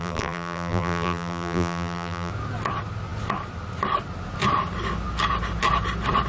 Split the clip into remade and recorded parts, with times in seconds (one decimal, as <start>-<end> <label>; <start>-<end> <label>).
0.0-2.3 remade; 2.3-6.3 recorded